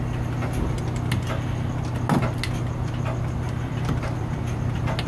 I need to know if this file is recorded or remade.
recorded